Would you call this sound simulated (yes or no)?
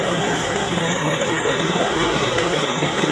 yes